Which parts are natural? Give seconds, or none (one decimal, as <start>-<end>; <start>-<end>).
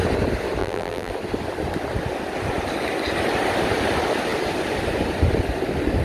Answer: 0.0-0.6; 1.1-6.0